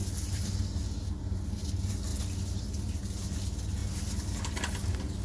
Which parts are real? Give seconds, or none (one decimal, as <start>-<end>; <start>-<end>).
0.0-5.2